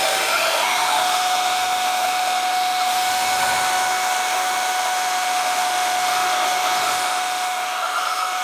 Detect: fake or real fake